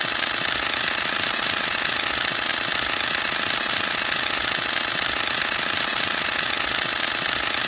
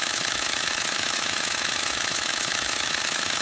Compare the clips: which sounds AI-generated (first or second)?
second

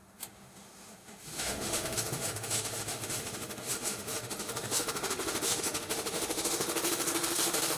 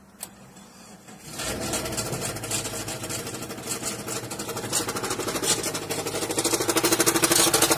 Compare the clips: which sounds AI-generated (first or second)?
first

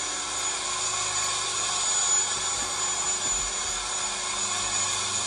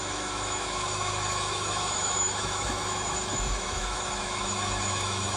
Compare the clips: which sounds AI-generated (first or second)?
second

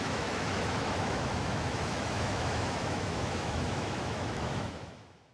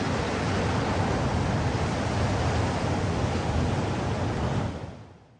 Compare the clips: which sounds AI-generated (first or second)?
first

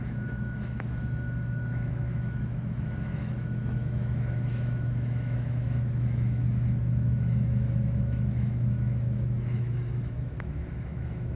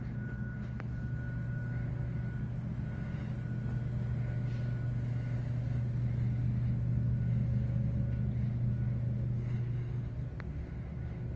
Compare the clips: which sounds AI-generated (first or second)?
first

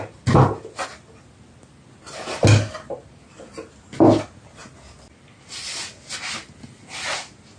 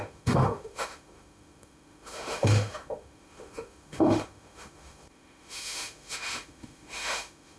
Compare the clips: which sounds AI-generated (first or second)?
second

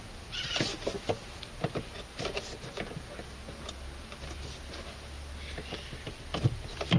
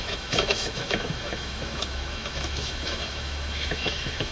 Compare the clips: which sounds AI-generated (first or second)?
second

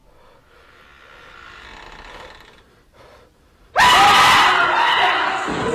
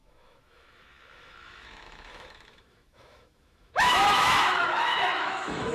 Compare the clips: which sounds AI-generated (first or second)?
second